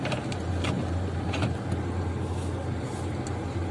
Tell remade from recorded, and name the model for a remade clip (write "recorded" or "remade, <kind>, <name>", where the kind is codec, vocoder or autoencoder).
recorded